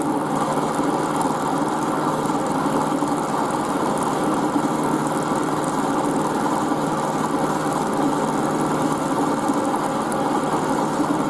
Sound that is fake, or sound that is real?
real